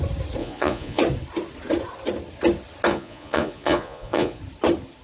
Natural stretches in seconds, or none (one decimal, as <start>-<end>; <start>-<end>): 0.0-0.4; 1.0-2.9; 4.4-5.0